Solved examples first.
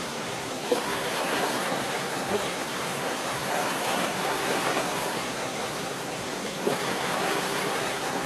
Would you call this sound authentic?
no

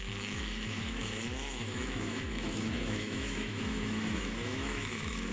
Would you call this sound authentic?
no